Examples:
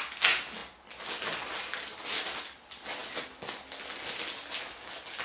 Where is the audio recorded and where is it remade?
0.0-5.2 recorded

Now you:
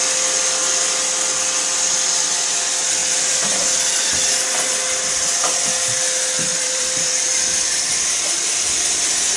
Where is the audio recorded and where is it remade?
0.0-3.0 recorded; 3.0-3.5 remade; 3.5-6.5 recorded; 6.5-7.3 remade; 7.3-9.4 recorded

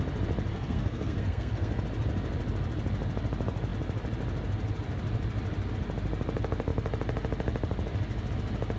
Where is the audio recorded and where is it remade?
0.0-0.5 recorded; 0.5-1.8 remade; 1.8-8.8 recorded